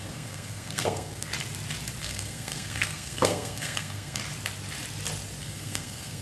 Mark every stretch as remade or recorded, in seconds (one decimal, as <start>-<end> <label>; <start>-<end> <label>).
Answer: 0.0-1.3 remade; 1.3-2.0 recorded; 2.0-4.2 remade; 4.2-5.4 recorded; 5.4-6.2 remade

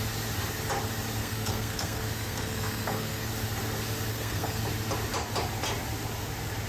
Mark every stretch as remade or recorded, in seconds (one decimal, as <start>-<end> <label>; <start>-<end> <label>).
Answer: 0.0-1.2 recorded; 1.2-3.3 remade; 3.3-4.1 recorded; 4.1-4.6 remade; 4.6-6.7 recorded

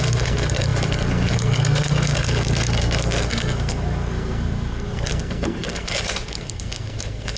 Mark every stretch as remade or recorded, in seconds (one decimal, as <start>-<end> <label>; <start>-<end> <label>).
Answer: 0.0-7.4 remade